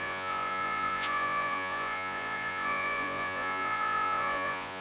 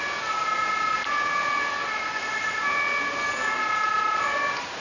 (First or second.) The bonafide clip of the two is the second